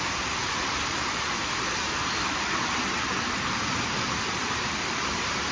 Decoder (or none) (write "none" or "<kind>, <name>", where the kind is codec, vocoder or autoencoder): vocoder, BigVGAN v2